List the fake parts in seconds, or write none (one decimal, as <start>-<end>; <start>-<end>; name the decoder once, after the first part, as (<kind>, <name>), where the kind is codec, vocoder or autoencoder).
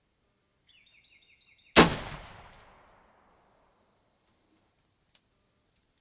none